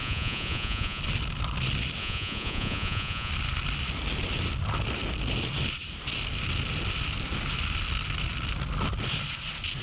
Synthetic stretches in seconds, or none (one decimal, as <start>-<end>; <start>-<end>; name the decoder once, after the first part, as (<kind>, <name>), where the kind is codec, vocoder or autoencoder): 0.0-1.0 (vocoder, Vocos); 2.0-3.3